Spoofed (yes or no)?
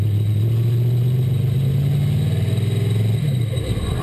no